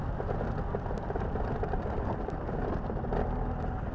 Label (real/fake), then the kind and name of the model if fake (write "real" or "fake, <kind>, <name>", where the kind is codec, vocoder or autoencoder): real